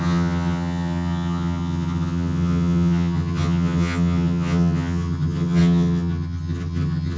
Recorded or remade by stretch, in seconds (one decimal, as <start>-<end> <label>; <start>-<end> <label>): 0.0-7.2 remade